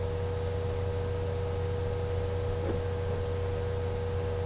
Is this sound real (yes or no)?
yes